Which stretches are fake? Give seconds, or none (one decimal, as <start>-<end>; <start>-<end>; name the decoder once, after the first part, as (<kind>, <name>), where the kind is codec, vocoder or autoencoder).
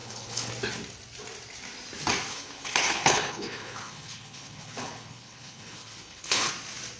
0.0-0.5 (codec, HILCodec); 2.3-6.5